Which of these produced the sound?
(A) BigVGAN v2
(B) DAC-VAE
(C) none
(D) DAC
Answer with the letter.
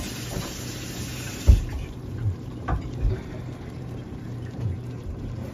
A